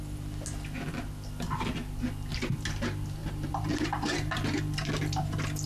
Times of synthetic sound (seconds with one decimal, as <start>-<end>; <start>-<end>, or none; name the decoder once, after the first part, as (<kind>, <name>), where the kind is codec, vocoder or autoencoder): 3.2-4.6 (vocoder, BigVGAN v2)